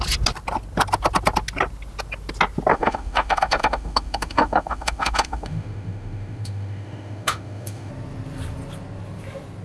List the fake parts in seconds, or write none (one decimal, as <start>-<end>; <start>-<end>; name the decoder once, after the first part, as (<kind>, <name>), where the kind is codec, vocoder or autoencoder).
2.7-7.9 (autoencoder, DAC-VAE)